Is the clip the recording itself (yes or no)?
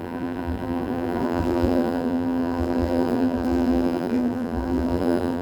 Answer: no